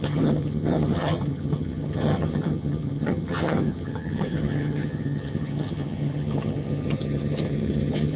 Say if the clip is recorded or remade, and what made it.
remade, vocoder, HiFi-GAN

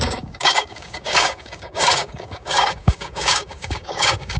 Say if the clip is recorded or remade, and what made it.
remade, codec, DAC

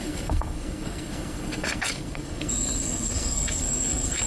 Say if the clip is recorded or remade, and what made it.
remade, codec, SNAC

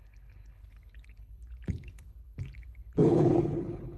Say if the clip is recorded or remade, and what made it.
remade, codec, HILCodec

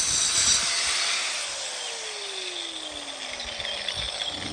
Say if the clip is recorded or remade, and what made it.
recorded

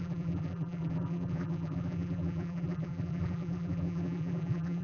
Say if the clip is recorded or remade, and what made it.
remade, vocoder, BigVGAN v2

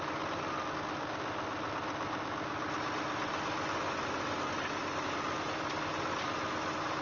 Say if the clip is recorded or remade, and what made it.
recorded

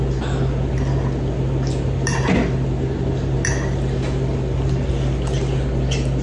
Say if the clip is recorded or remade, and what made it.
recorded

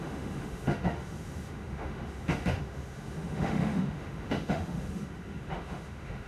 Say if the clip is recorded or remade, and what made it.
remade, autoencoder, DAC-VAE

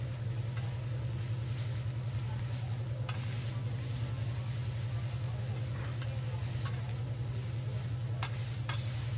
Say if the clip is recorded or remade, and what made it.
recorded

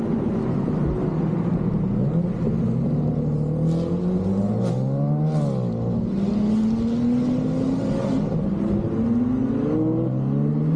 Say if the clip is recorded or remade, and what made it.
recorded